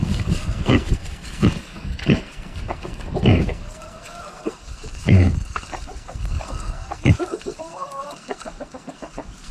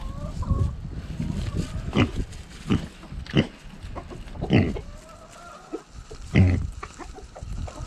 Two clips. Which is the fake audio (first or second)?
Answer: first